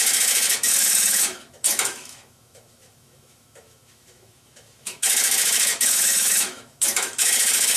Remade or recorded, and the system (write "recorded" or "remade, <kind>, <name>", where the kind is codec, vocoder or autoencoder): remade, autoencoder, DAC-VAE